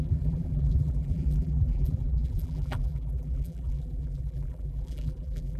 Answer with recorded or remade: remade